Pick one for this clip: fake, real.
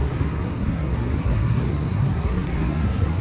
fake